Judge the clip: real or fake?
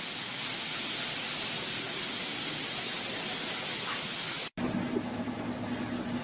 real